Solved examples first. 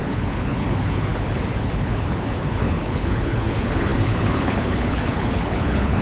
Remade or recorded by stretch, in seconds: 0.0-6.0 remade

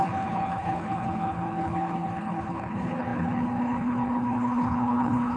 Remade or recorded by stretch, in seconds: 0.0-5.4 remade